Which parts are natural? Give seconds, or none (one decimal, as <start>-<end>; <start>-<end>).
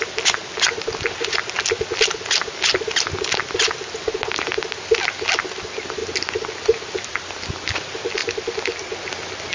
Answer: 0.0-9.5